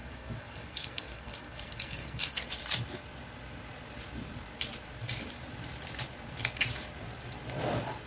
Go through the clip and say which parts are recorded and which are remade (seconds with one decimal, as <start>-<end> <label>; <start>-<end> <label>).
0.0-2.5 remade; 2.5-8.1 recorded